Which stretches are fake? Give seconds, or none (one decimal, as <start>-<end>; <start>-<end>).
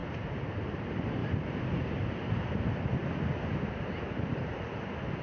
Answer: none